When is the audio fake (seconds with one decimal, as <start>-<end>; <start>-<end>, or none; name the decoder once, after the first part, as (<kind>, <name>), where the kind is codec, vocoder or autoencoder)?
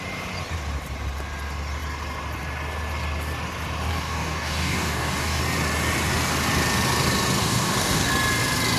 3.9-5.4 (codec, DAC); 7.4-8.1